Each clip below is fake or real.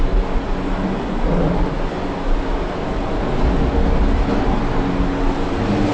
real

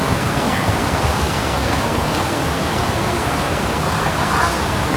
fake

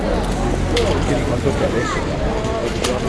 real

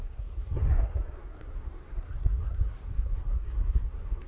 fake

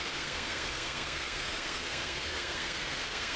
fake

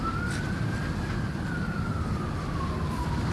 real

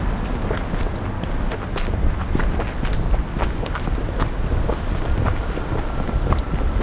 real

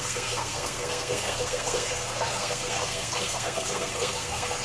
fake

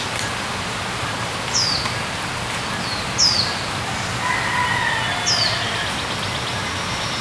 real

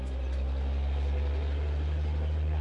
real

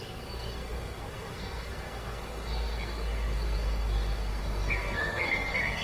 fake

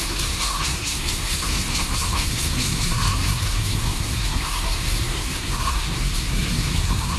fake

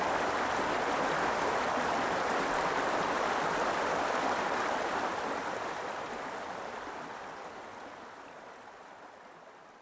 real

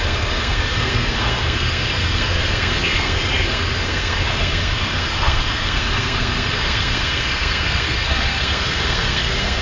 fake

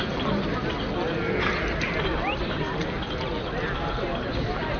real